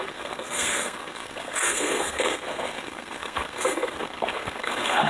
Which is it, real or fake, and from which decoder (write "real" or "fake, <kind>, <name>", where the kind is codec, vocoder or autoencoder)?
fake, codec, SNAC